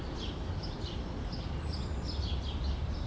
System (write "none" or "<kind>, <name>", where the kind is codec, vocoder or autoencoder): none